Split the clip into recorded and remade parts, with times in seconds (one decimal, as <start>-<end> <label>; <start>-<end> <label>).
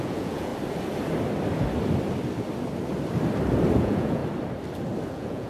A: 0.0-0.5 remade; 0.5-3.8 recorded; 3.8-4.2 remade; 4.2-5.1 recorded; 5.1-5.5 remade